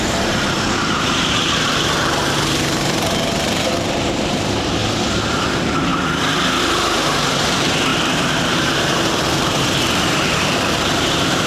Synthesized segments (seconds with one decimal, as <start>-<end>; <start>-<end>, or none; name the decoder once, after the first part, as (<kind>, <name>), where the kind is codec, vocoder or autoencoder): 0.0-4.8 (vocoder, BigVGAN v2); 5.4-5.9; 6.6-11.5